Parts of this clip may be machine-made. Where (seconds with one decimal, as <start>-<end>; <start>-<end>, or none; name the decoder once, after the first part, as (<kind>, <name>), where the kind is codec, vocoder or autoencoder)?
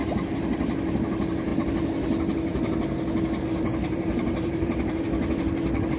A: 3.8-5.0 (vocoder, BigVGAN v2)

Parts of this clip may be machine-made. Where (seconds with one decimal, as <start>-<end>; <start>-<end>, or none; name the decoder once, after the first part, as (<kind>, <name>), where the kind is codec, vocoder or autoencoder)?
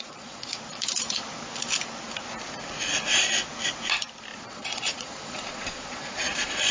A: 0.0-0.5 (vocoder, Vocos); 4.5-6.7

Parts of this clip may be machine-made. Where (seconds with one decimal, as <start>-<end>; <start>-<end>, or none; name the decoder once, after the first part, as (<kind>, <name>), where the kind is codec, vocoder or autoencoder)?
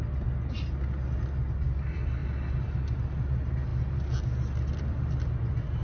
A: none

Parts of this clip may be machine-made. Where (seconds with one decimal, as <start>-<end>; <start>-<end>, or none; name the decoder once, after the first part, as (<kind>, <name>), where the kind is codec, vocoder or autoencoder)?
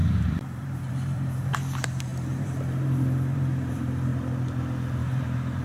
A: 0.0-4.1 (vocoder, BigVGAN v2); 5.0-5.6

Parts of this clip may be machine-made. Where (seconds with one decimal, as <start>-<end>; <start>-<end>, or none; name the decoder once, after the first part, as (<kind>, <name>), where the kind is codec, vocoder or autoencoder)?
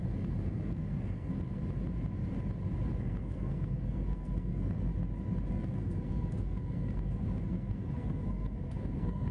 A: 0.0-1.6 (codec, SNAC); 3.0-4.9; 5.5-9.3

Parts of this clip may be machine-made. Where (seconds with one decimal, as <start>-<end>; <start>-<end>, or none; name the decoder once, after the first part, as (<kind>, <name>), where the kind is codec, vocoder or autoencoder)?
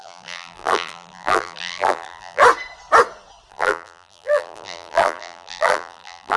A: 0.0-2.4 (vocoder, BigVGAN v2); 3.5-6.4